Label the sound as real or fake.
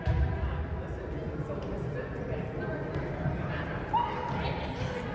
real